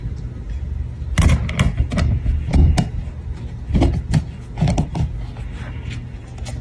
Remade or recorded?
recorded